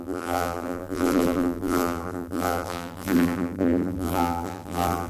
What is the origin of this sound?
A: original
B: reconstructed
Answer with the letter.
B